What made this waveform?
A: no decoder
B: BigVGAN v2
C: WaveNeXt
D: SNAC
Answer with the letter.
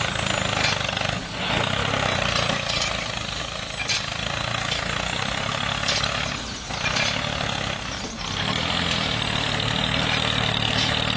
A